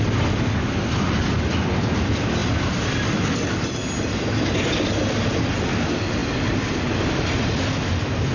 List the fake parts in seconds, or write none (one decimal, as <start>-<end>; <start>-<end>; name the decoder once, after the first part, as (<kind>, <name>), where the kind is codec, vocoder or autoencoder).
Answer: none